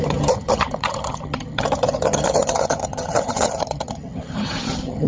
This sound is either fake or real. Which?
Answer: fake